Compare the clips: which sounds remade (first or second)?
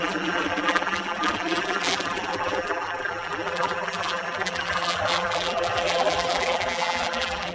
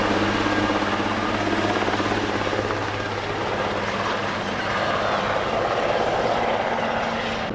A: first